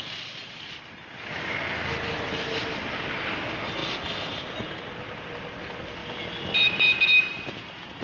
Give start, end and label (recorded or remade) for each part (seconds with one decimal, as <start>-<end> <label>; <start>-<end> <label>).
0.0-8.0 recorded